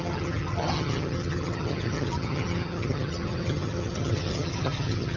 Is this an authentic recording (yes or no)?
no